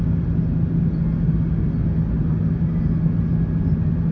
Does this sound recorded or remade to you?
recorded